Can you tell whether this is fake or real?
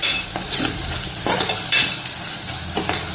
real